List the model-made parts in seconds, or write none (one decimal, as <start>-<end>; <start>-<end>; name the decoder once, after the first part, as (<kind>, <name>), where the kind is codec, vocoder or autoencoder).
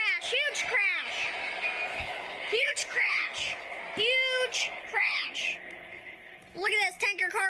1.9-3.8 (codec, HILCodec); 4.5-6.7